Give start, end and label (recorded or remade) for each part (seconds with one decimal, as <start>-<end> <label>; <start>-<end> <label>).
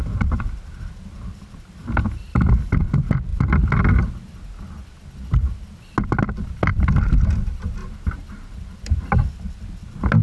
0.0-10.2 recorded